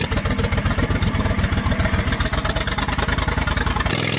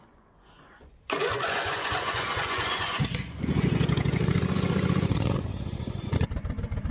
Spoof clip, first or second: second